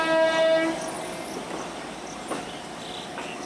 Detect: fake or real real